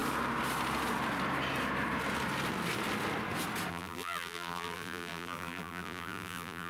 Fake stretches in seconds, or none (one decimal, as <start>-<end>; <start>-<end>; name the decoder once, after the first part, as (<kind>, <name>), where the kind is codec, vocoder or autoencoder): 3.7-6.7 (vocoder, BigVGAN v2)